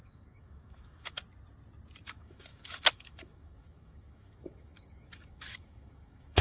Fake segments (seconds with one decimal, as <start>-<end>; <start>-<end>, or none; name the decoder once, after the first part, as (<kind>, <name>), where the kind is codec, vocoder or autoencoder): 0.0-1.2 (autoencoder, DAC-VAE); 2.0-6.4